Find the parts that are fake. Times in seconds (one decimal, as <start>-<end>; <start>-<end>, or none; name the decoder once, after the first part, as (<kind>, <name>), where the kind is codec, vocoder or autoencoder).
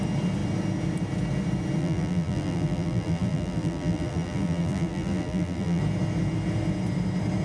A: 1.8-5.8 (vocoder, BigVGAN v2)